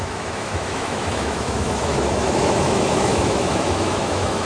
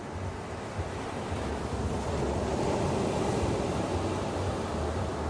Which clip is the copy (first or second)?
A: first